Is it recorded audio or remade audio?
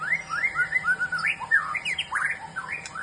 remade